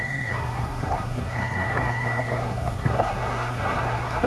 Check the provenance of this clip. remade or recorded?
remade